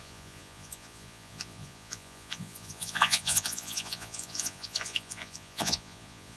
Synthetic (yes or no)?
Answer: yes